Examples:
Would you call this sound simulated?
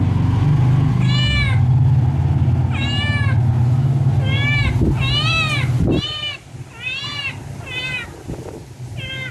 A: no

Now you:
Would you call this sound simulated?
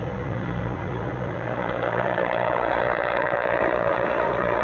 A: yes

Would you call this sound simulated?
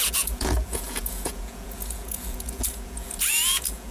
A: yes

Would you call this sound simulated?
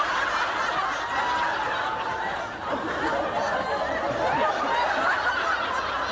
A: no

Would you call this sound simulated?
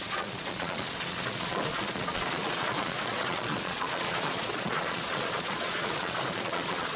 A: yes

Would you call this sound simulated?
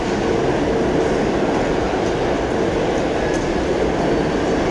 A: no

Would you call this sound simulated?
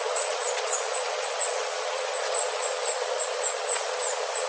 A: yes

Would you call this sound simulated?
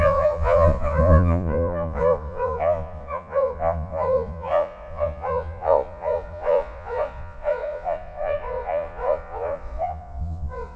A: yes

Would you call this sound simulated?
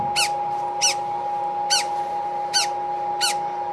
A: no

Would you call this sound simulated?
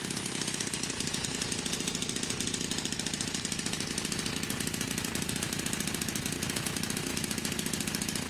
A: no